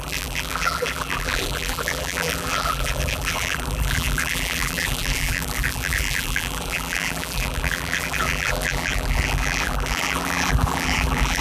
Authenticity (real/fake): fake